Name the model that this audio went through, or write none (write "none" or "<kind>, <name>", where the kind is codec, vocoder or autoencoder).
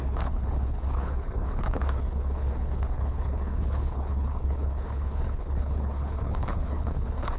codec, HILCodec